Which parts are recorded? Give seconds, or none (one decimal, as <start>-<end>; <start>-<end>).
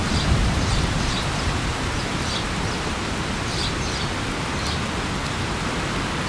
3.8-6.3